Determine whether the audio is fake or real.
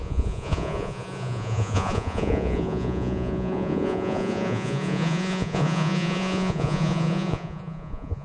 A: fake